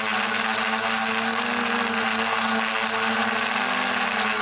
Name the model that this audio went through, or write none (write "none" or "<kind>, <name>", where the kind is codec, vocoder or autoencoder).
none